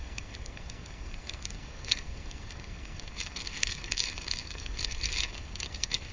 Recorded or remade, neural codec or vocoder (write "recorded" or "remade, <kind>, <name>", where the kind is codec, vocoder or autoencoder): remade, codec, SNAC